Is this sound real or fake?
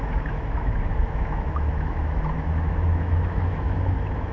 fake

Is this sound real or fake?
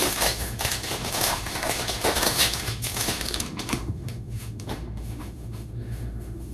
fake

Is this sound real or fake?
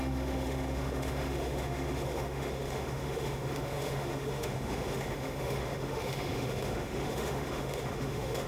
fake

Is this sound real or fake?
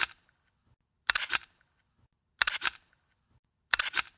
real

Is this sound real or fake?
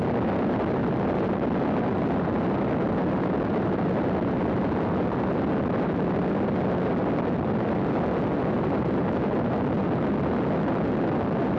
real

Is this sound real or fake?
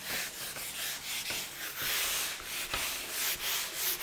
real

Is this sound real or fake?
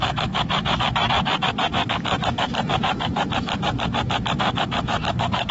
fake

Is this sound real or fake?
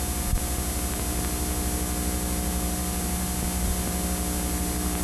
real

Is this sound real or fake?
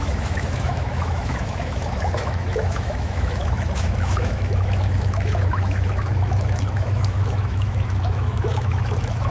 fake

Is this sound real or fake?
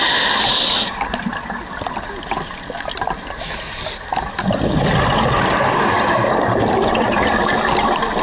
real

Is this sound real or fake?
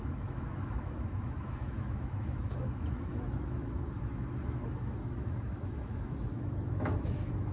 fake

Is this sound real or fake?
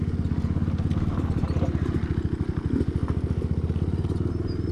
real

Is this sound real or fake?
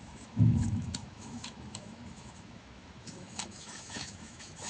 fake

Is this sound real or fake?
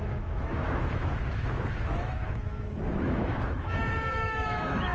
fake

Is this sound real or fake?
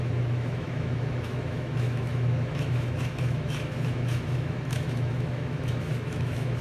fake